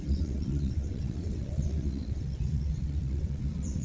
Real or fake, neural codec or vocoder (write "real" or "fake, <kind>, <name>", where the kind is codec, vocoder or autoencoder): fake, vocoder, WaveNeXt